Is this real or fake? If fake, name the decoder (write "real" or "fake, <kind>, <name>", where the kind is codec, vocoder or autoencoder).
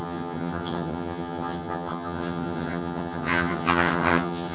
fake, vocoder, HiFi-GAN